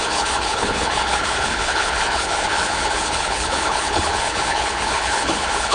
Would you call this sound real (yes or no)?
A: no